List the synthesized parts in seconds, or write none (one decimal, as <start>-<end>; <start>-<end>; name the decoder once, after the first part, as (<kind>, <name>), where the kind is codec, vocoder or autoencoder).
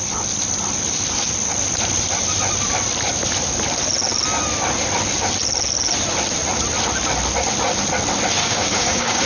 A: 8.4-9.2 (codec, DAC)